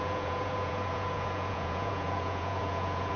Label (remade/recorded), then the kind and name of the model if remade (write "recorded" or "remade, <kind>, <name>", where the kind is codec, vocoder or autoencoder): remade, vocoder, Vocos